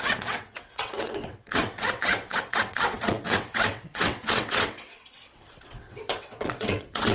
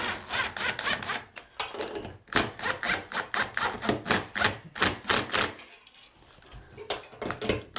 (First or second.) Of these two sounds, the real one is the second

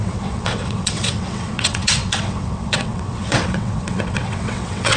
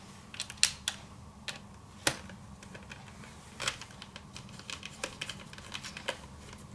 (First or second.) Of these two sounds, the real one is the second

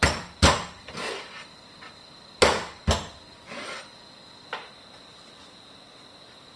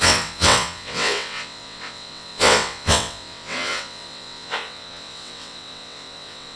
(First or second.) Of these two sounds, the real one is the first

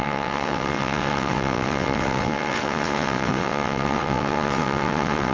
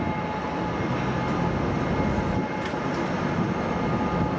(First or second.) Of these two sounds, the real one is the second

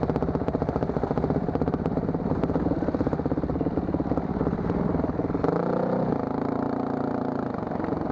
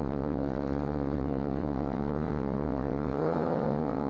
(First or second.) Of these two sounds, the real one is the first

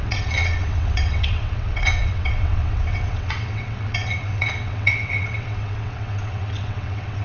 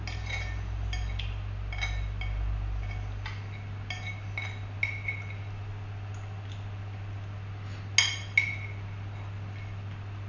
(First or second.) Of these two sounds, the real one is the second